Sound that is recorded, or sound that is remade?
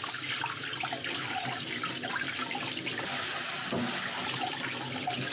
recorded